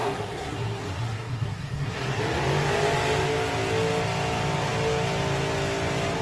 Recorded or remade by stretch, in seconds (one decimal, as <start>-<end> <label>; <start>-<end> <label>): 0.0-2.2 remade; 2.2-6.2 recorded